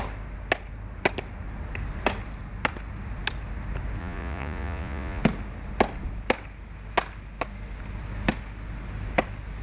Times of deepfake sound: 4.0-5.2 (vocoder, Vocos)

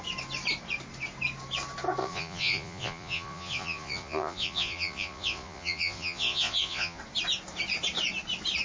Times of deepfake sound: 2.0-7.0 (vocoder, Vocos)